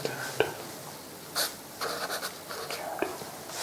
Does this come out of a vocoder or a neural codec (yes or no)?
no